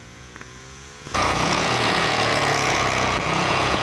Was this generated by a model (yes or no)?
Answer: yes